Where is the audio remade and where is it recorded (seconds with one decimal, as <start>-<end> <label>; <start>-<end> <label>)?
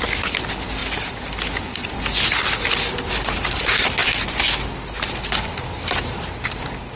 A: 0.0-0.8 recorded; 0.8-3.6 remade; 3.6-7.0 recorded